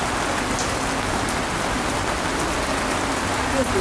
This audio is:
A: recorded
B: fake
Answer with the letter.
A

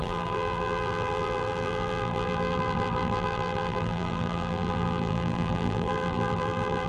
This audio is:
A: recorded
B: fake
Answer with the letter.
B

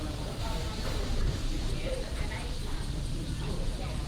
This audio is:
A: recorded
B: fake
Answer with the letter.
B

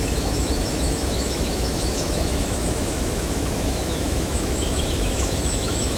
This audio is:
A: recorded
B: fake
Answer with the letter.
B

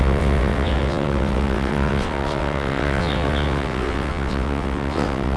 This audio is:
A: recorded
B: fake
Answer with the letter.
B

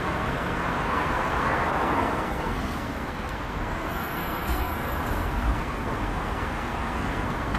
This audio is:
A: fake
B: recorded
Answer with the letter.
A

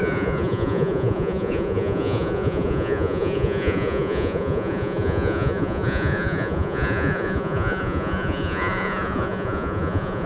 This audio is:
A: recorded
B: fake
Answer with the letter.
B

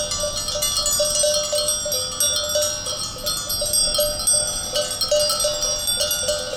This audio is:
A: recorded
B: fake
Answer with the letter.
A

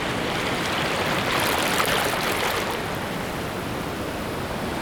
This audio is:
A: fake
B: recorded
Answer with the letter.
B